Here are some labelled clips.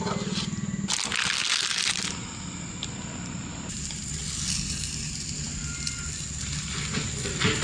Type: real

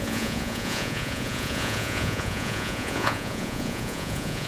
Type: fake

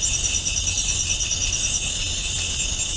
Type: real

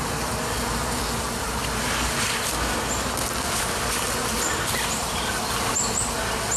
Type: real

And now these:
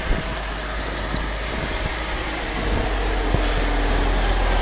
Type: real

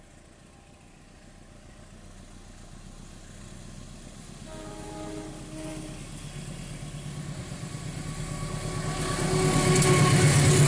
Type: real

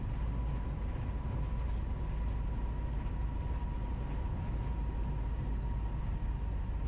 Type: real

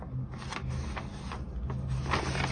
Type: real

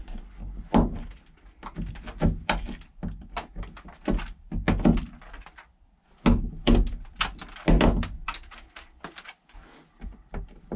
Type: real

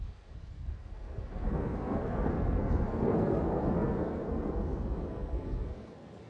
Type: fake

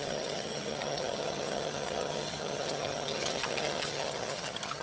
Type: fake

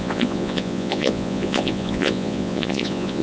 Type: fake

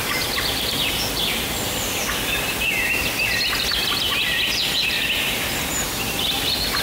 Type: real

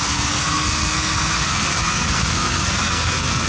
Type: fake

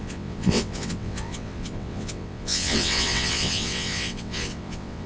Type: fake